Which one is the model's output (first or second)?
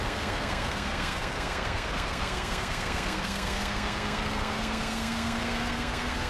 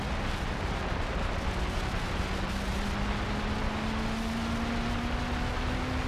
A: first